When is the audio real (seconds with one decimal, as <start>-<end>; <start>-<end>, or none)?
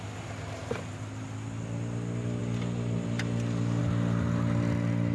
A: 0.0-0.6; 1.2-5.1